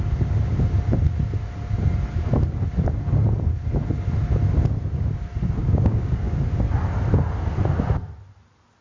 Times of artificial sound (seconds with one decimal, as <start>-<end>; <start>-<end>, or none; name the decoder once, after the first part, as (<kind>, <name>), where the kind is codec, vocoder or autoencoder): 5.6-6.4 (codec, DAC)